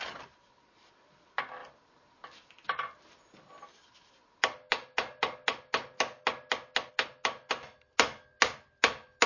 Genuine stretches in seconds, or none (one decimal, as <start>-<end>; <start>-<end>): 0.0-9.3